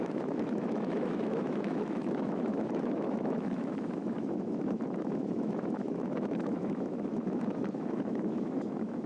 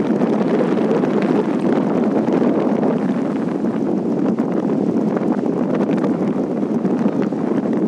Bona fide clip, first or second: second